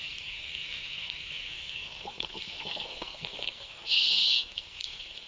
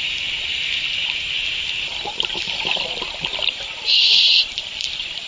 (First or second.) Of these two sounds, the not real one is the first